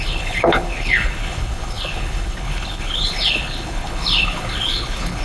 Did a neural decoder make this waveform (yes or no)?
yes